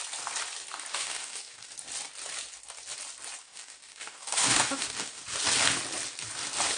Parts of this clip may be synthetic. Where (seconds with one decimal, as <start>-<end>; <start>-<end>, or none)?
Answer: 0.9-1.7; 3.4-5.2